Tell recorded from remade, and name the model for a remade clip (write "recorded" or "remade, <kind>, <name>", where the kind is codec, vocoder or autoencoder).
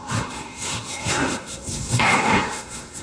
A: remade, codec, SNAC